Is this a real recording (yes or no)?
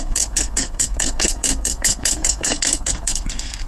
no